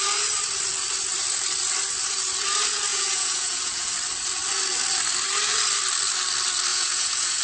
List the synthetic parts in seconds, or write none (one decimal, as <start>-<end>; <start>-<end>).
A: 2.9-3.9; 6.7-7.4